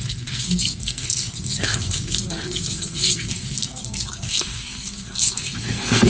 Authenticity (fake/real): fake